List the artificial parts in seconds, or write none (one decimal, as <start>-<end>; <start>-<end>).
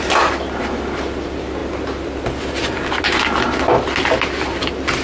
none